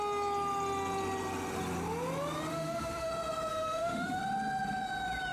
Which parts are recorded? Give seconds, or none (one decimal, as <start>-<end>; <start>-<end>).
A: 0.0-2.5; 3.1-3.5; 4.2-5.3